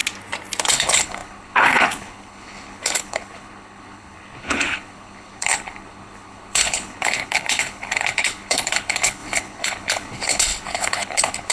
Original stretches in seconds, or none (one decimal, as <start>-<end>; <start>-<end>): 0.0-0.6